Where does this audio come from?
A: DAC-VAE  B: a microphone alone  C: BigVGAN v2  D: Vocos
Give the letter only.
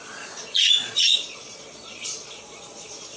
D